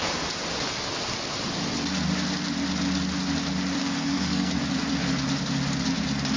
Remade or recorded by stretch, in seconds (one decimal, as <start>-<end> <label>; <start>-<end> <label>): 0.0-3.8 recorded; 3.8-4.5 remade; 4.5-6.4 recorded